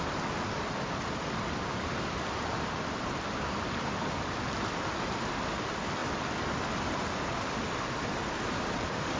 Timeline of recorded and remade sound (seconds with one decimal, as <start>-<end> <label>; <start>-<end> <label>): 0.0-9.2 recorded